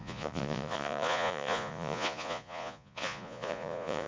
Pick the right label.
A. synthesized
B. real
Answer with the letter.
A